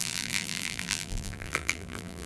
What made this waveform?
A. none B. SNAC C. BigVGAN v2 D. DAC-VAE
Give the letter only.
C